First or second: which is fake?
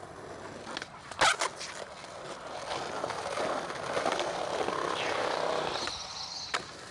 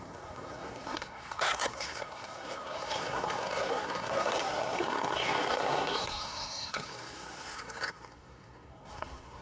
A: second